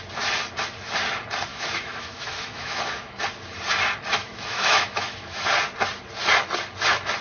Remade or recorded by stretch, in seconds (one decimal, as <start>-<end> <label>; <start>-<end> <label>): 0.0-1.5 recorded; 1.5-3.2 remade; 3.2-4.1 recorded; 4.1-5.5 remade; 5.5-7.2 recorded